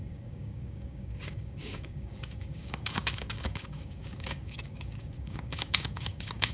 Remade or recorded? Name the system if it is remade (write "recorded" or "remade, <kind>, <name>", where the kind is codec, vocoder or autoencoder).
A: remade, codec, DAC